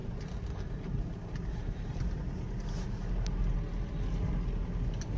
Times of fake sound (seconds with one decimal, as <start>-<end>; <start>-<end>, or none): none